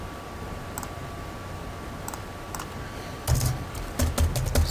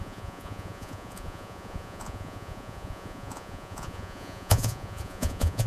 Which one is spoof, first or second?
second